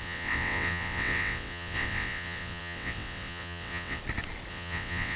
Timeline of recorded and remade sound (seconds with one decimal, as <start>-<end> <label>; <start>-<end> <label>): 0.0-4.0 remade; 4.0-4.5 recorded; 4.5-5.2 remade